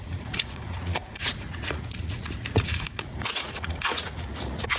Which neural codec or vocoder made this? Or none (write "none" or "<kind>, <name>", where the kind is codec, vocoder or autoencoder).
vocoder, Vocos